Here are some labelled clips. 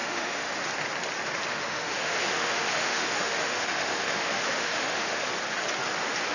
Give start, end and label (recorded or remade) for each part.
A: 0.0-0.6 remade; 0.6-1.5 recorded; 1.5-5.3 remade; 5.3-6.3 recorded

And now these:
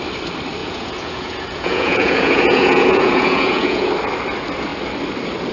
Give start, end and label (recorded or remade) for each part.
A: 0.0-0.6 recorded; 0.6-3.9 remade; 3.9-5.5 recorded

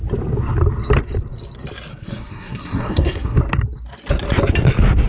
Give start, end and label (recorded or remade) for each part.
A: 0.0-1.9 recorded; 1.9-3.4 remade; 3.4-5.1 recorded

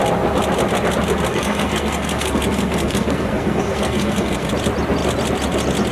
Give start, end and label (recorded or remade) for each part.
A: 0.0-1.3 recorded; 1.3-4.5 remade; 4.5-5.9 recorded

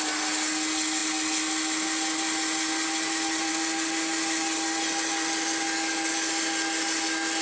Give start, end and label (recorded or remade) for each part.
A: 0.0-7.4 recorded

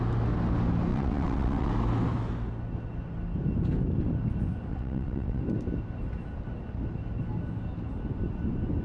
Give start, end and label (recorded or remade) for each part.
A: 0.0-0.9 recorded; 0.9-1.7 remade; 1.7-4.7 recorded; 4.7-5.4 remade; 5.4-8.8 recorded

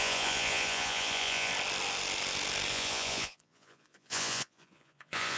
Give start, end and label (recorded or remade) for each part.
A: 0.0-1.5 remade; 1.5-2.7 recorded; 2.7-5.4 remade

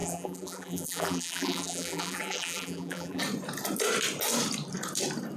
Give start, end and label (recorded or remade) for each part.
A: 0.0-3.2 remade; 3.2-5.4 recorded